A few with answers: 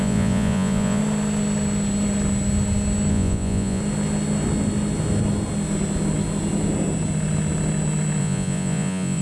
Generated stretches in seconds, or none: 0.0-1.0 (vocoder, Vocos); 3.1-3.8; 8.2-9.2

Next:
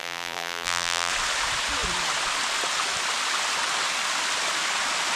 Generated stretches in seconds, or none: 0.0-1.1 (vocoder, BigVGAN v2)